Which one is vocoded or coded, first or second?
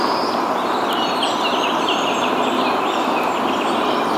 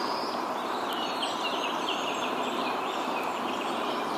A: second